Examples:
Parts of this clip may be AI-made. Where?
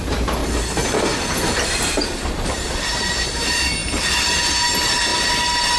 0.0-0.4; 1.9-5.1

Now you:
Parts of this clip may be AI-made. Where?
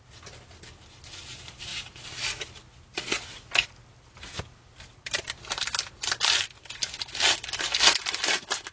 none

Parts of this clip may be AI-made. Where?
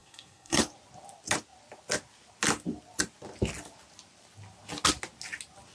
0.0-0.6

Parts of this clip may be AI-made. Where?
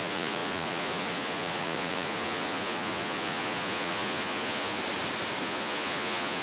0.0-4.8; 5.4-6.4